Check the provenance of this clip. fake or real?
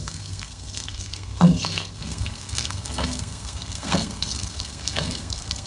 fake